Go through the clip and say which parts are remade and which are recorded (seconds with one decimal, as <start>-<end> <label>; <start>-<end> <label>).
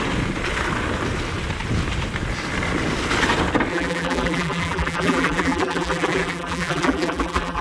0.0-3.7 recorded; 3.7-7.6 remade